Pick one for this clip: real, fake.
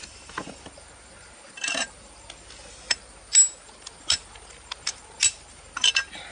real